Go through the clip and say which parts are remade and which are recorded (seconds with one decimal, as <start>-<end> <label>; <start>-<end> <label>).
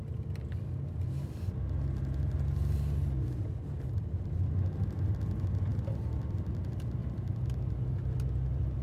0.0-8.8 recorded